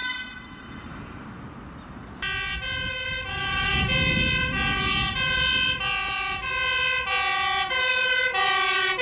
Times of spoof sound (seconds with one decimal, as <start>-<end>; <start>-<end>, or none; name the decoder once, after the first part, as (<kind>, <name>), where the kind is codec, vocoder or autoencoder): 0.5-1.2 (vocoder, BigVGAN v2); 2.9-3.7; 7.7-9.0

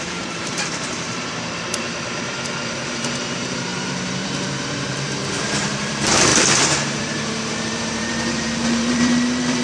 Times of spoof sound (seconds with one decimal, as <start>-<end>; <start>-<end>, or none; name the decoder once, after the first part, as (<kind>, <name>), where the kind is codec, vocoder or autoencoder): 0.0-9.6 (vocoder, BigVGAN v2)

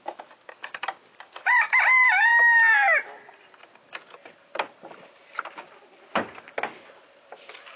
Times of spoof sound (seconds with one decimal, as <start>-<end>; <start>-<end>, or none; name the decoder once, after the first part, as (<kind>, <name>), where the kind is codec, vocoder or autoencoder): none

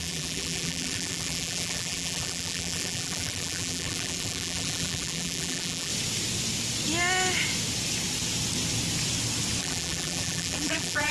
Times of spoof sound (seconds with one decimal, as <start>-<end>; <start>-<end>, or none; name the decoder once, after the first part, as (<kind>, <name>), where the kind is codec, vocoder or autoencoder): 0.0-5.9 (vocoder, BigVGAN v2); 9.6-11.1

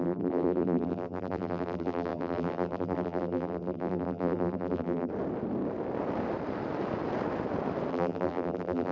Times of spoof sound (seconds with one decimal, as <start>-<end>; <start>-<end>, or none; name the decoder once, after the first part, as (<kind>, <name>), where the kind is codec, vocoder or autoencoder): 0.0-5.1 (vocoder, BigVGAN v2); 7.9-8.9

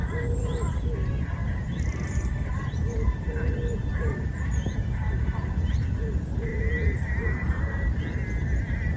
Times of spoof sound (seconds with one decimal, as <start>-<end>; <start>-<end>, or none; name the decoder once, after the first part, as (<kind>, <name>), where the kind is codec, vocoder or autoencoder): 1.4-6.0 (vocoder, BigVGAN v2); 6.5-7.9